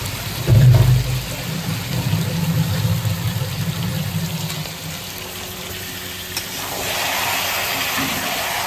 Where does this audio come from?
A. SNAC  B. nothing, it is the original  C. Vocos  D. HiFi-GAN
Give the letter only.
B